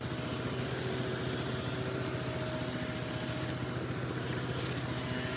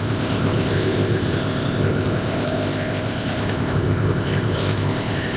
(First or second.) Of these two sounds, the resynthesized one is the second